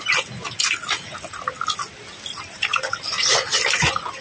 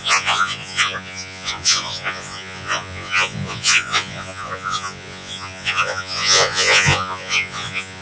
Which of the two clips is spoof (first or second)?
second